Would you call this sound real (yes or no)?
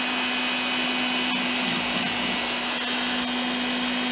yes